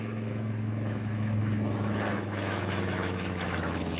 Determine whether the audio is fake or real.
fake